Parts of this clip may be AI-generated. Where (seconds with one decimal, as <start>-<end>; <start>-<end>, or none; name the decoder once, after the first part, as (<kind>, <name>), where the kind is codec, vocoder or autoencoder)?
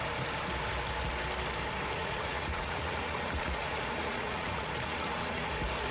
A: 2.0-5.5 (vocoder, Vocos)